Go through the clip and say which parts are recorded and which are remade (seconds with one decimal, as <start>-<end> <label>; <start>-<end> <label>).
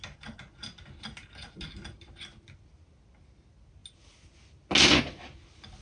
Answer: 0.0-5.8 recorded